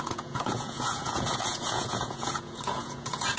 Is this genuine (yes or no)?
no